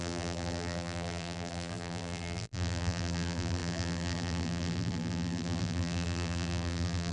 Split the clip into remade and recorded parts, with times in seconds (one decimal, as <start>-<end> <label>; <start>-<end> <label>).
0.0-7.1 remade